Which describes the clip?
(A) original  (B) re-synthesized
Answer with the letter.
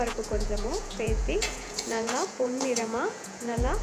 B